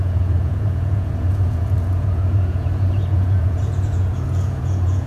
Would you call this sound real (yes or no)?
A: no